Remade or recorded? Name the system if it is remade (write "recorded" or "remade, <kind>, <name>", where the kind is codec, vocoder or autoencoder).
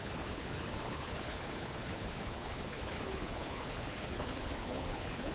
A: remade, codec, HILCodec